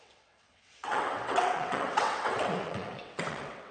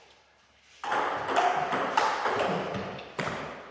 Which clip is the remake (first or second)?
first